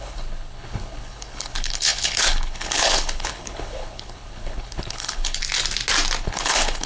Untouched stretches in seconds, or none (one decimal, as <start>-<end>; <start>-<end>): 5.4-6.2